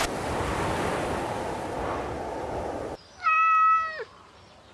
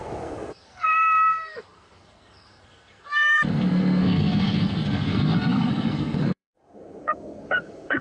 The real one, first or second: first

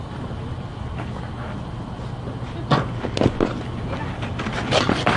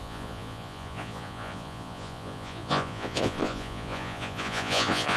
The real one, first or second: first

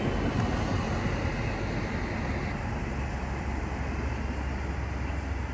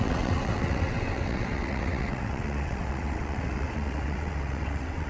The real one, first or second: first